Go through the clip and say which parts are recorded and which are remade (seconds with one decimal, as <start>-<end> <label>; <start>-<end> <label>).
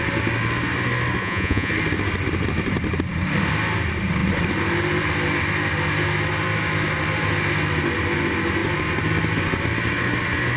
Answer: 0.0-1.2 recorded; 1.2-1.7 remade; 1.7-10.6 recorded